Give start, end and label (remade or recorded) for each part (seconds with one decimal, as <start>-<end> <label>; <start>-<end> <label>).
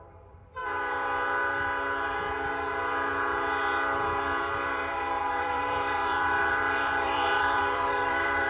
0.0-0.6 remade; 0.6-5.4 recorded; 5.4-8.5 remade